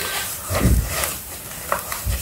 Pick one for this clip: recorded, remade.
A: remade